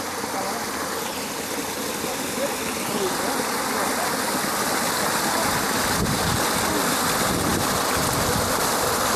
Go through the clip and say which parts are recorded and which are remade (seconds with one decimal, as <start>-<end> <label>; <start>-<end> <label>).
0.0-9.2 recorded